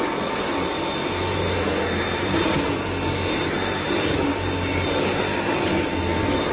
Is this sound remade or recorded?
recorded